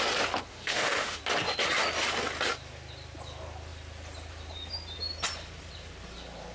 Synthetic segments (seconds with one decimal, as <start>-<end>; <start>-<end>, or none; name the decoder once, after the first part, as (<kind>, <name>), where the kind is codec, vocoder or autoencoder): 0.5-1.2 (autoencoder, DAC-VAE)